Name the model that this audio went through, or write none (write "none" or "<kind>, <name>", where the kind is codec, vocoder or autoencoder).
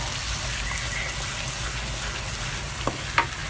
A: none